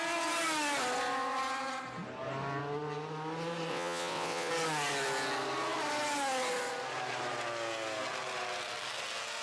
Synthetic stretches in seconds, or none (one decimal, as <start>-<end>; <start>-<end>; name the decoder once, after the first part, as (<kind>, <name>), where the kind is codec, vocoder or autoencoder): 3.7-4.5 (vocoder, WaveNeXt)